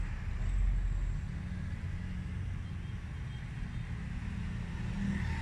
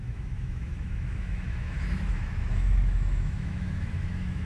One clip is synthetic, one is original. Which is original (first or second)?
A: first